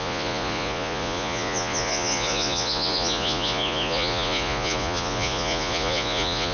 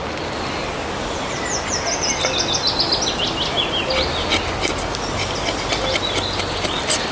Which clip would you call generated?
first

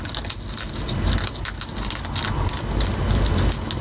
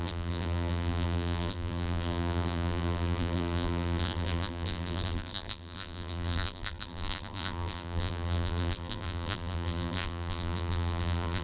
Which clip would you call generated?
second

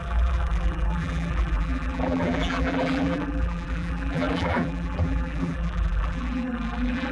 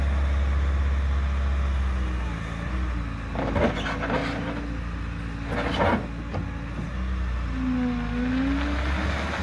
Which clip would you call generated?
first